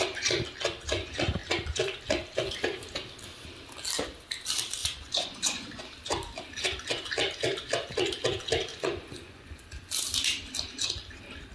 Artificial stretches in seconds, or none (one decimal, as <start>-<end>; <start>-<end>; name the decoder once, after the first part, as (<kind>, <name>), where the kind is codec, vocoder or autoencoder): 4.8-5.8 (vocoder, Vocos); 8.7-9.6